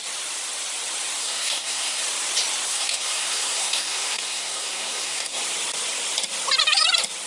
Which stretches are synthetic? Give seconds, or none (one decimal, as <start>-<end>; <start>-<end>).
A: 1.2-2.0; 2.7-5.4